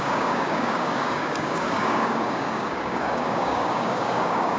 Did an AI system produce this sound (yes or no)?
yes